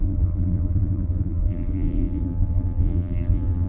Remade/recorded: remade